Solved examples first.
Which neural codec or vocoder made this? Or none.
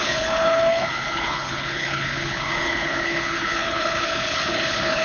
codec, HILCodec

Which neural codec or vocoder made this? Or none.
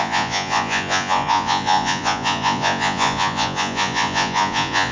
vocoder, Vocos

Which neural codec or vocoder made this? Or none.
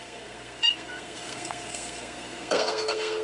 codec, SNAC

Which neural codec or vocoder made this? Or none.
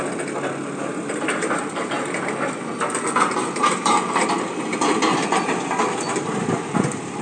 none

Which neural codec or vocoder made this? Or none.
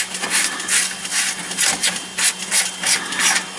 none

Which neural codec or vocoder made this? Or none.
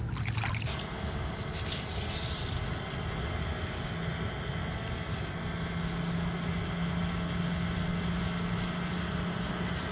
none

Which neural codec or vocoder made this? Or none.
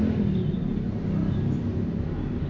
none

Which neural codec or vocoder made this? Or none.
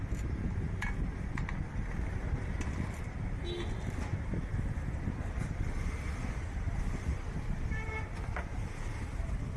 none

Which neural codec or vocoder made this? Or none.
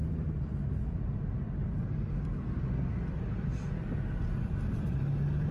none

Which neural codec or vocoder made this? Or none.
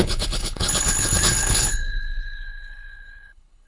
codec, HILCodec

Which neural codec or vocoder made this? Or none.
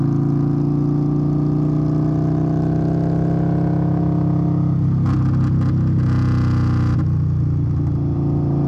none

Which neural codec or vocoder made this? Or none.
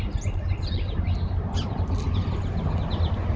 none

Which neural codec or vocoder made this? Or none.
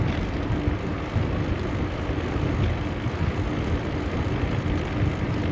none